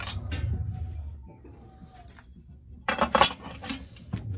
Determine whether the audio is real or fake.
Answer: real